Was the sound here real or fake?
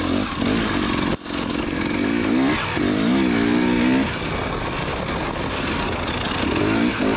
real